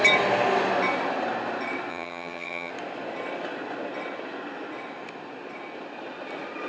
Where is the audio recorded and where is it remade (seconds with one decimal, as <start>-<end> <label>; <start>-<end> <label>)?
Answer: 0.0-1.9 recorded; 1.9-2.7 remade; 2.7-6.7 recorded